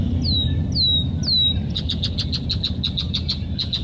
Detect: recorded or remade recorded